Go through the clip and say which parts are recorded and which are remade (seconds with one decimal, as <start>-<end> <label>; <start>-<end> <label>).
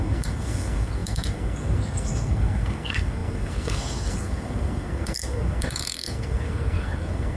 0.0-7.4 remade